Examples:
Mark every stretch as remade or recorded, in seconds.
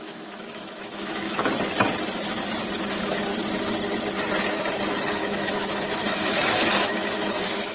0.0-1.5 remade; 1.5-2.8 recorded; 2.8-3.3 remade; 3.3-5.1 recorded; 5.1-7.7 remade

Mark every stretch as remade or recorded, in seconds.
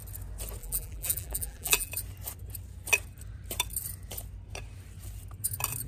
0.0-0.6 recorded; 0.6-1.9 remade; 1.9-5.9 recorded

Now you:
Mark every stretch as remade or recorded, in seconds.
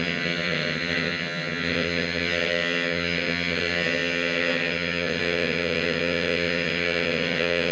0.0-7.7 remade